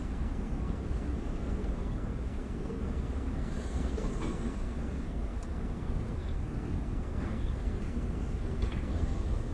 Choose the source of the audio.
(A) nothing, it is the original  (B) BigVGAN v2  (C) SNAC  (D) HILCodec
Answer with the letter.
C